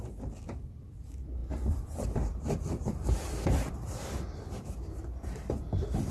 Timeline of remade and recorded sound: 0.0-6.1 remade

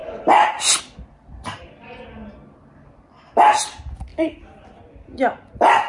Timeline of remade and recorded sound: 0.0-1.7 remade; 1.7-4.1 recorded; 4.1-4.8 remade; 4.8-5.9 recorded

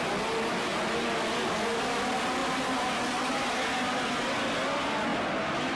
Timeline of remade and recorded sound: 0.0-5.8 recorded

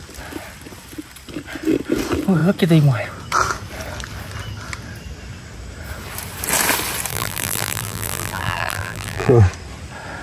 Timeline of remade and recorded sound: 0.0-7.1 recorded; 7.1-9.3 remade; 9.3-10.2 recorded

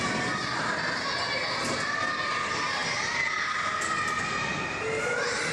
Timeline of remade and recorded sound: 0.0-5.5 recorded

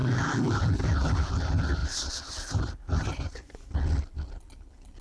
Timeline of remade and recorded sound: 0.0-1.8 recorded; 1.8-3.7 remade; 3.7-5.0 recorded

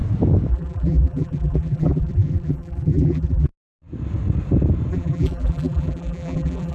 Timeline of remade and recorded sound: 0.0-0.5 recorded; 0.5-3.5 remade; 3.5-4.9 recorded; 4.9-6.7 remade

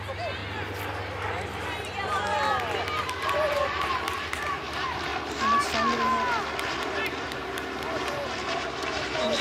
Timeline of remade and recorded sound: 0.0-0.4 remade; 0.4-3.0 recorded; 3.0-5.1 remade; 5.1-6.7 recorded; 6.7-9.4 remade